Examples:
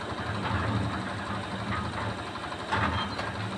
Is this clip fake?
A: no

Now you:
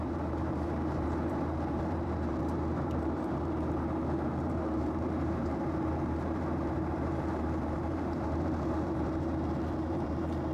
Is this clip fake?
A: yes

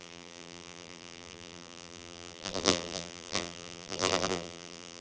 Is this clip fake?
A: yes